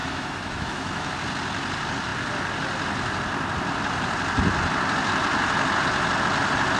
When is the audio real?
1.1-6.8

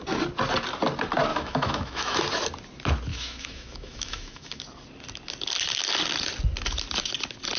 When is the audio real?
0.0-1.3; 2.2-3.1; 4.6-7.6

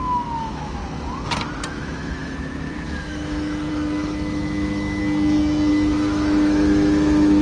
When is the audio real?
0.8-1.7; 5.0-5.7

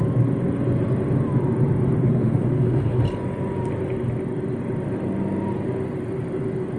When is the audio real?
0.0-2.0; 3.0-6.8

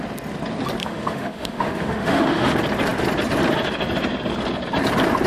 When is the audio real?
0.0-0.8; 2.5-5.3